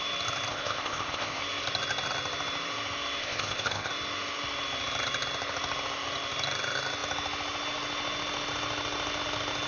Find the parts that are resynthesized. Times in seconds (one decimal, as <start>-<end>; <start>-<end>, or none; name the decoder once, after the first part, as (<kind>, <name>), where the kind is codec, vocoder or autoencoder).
0.5-1.4 (codec, ZipCodec); 3.2-3.9

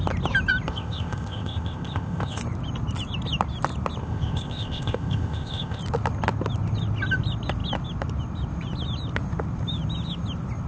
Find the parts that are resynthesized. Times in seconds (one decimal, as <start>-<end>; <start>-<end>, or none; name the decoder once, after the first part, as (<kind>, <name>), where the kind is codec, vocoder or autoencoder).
0.7-2.4 (codec, ZipCodec); 4.0-5.8

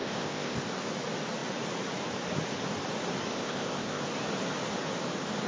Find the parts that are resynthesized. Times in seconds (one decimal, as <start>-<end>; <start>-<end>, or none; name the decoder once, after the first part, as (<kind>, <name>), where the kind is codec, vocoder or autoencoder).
0.0-0.7 (codec, ZipCodec); 3.3-4.0

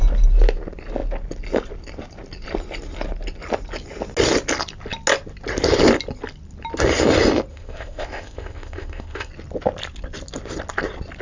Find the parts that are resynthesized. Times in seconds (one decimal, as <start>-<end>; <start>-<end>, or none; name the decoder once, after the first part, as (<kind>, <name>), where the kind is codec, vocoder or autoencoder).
7.5-9.3 (codec, ZipCodec)